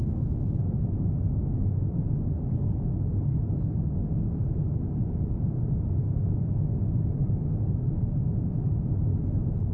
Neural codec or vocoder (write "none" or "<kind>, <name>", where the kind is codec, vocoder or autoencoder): none